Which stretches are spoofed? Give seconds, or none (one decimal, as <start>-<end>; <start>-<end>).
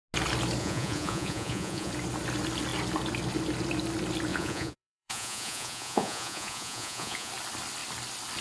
0.6-1.9; 4.3-7.3